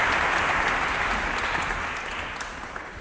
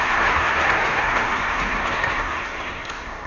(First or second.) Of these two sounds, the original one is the first